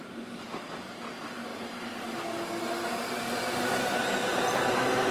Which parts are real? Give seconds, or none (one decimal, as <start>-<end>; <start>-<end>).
0.0-5.1